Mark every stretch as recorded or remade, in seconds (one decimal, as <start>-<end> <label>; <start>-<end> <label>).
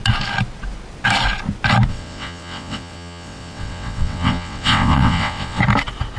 0.0-1.9 recorded; 1.9-5.6 remade; 5.6-6.2 recorded